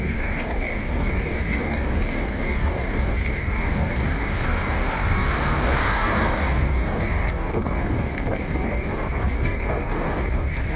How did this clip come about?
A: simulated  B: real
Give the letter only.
A